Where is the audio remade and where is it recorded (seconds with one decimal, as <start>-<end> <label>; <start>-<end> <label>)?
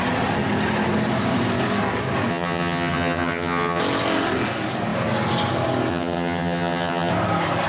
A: 0.0-2.3 recorded; 2.3-3.8 remade; 3.8-5.9 recorded; 5.9-7.1 remade; 7.1-7.7 recorded